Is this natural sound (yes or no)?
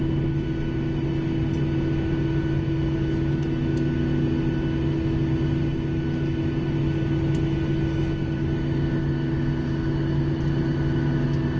yes